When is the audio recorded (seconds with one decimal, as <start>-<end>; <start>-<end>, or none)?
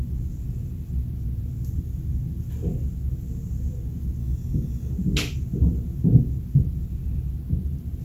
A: 0.0-4.2; 4.9-8.0